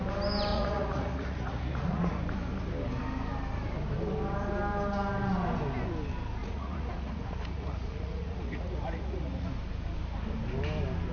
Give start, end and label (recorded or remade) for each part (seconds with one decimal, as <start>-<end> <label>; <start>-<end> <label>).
0.0-0.5 recorded; 0.5-2.2 remade; 2.2-6.4 recorded; 6.4-9.5 remade; 9.5-11.1 recorded